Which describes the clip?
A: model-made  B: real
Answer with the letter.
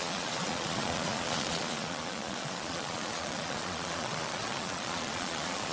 A